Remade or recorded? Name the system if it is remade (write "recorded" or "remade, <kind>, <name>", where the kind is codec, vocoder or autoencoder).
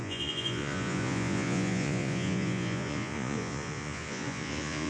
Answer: remade, vocoder, Vocos